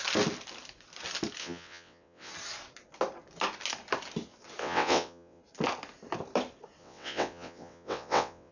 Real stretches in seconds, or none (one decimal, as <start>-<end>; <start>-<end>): 0.0-1.4; 2.3-4.6; 5.4-6.8

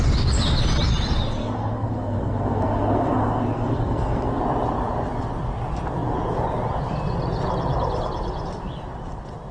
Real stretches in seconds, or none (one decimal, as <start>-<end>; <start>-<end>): 0.0-1.4; 4.4-9.5

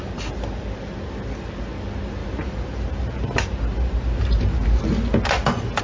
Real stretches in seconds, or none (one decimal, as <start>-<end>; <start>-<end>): 0.0-5.8

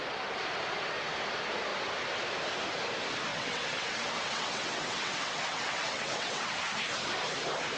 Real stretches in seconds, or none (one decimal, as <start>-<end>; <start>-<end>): 0.0-3.3; 6.6-7.8